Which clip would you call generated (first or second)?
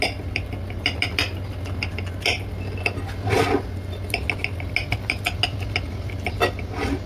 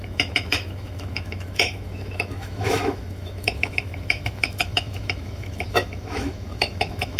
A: second